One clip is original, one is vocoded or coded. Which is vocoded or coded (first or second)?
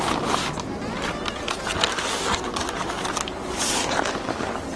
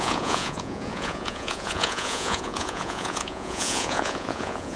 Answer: second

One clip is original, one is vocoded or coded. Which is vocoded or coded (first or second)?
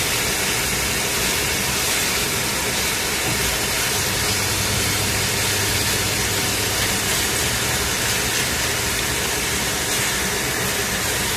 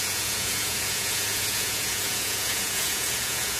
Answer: second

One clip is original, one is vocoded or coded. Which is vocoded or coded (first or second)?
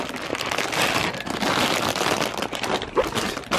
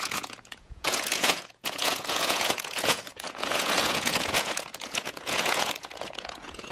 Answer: second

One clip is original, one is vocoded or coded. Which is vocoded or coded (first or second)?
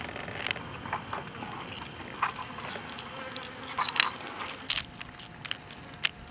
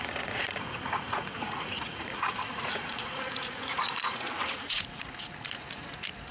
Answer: second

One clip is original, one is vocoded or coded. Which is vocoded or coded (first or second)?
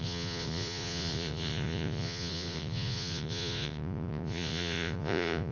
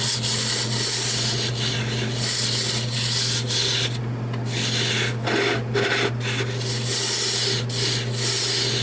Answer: first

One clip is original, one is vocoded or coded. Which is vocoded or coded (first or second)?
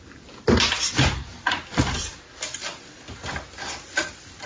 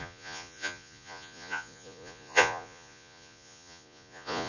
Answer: second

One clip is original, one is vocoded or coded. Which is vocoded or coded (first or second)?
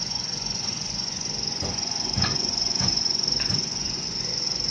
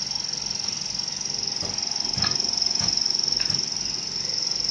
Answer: first